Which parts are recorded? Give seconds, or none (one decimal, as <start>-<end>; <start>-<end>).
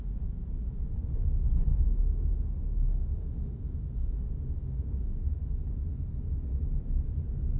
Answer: 0.0-1.7; 5.4-7.6